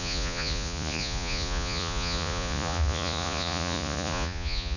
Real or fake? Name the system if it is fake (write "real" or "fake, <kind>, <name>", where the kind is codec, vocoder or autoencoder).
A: fake, vocoder, Vocos